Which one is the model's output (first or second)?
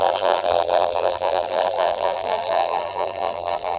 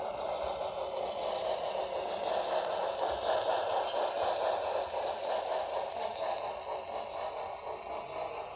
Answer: first